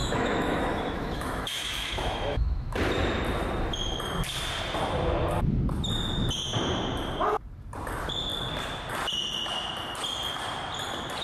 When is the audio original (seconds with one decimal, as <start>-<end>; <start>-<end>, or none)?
2.8-11.2